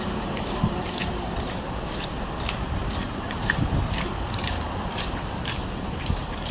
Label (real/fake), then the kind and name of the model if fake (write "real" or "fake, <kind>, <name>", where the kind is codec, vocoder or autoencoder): fake, vocoder, BigVGAN v2